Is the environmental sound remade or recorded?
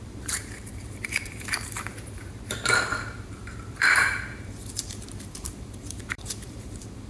remade